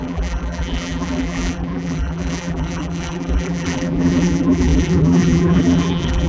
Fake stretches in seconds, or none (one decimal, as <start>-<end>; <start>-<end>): 0.0-6.3

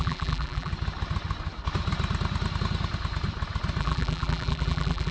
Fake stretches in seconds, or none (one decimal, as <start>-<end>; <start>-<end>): 0.0-0.7; 3.8-5.1

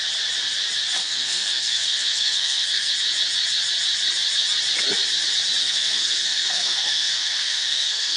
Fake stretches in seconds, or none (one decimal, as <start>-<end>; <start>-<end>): 1.0-2.9; 5.6-8.2

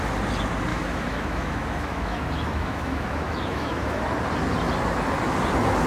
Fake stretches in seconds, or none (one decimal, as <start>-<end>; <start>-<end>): 0.7-4.0